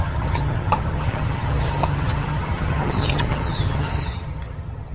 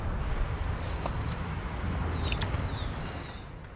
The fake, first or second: first